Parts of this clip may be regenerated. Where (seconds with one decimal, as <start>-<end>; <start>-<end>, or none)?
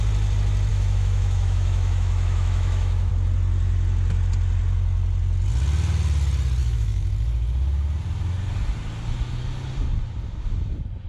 0.7-3.1; 6.6-7.1